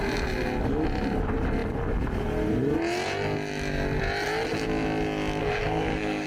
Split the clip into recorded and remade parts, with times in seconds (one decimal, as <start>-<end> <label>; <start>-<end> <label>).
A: 0.0-5.4 recorded; 5.4-6.3 remade